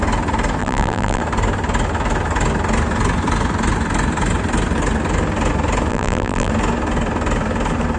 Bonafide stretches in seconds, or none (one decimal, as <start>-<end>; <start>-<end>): 0.0-0.6; 1.2-5.9; 6.5-8.0